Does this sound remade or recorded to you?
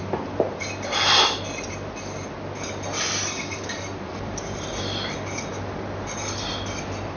recorded